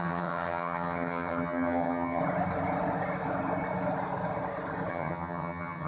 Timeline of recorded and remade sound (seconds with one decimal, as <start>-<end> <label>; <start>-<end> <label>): 0.0-2.2 remade; 2.2-4.9 recorded; 4.9-5.9 remade